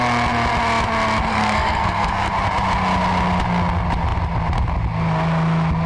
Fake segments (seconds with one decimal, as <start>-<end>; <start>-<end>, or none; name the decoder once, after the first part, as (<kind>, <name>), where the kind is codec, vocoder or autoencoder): 1.3-2.3 (codec, SNAC)

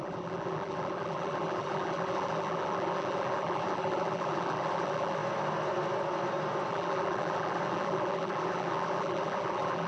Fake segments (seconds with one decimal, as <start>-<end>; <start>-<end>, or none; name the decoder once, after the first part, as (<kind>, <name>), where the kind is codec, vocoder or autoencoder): 0.0-5.2 (vocoder, BigVGAN v2); 6.7-9.9

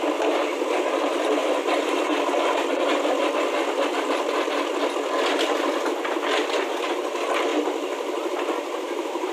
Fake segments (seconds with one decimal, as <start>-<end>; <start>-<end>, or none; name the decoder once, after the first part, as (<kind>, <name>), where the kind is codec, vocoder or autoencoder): 7.5-9.3 (vocoder, BigVGAN v2)

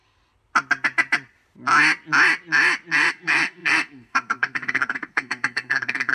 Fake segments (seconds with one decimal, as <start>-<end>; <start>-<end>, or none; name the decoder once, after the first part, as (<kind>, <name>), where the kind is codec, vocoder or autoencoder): 3.1-6.1 (codec, SNAC)

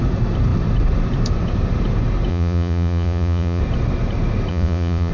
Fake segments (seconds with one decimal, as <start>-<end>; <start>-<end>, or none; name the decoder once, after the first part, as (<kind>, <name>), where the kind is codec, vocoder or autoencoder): 2.3-3.6 (vocoder, Vocos); 4.5-5.1